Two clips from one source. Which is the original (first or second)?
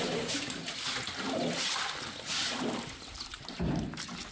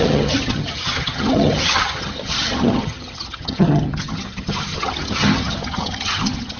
first